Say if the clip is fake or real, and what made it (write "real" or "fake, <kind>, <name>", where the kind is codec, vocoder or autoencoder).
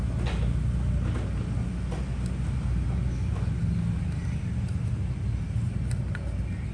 real